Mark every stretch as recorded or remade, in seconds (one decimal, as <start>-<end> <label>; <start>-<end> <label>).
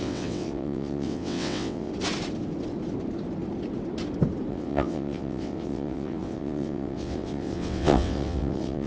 0.0-1.9 remade; 1.9-4.5 recorded; 4.5-8.9 remade